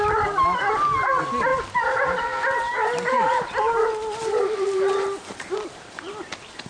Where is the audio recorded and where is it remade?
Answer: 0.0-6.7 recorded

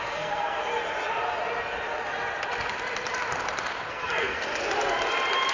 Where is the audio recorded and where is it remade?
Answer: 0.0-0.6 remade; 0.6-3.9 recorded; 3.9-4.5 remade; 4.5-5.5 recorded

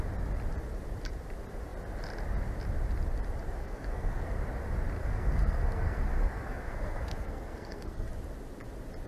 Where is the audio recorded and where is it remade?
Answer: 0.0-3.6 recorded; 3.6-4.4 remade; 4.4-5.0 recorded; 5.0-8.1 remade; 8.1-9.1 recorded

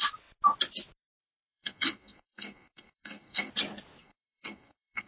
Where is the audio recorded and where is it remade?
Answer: 0.0-1.2 recorded; 1.2-3.5 remade; 3.5-4.0 recorded; 4.0-5.1 remade